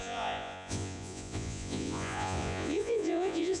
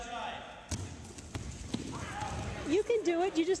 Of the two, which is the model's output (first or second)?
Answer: first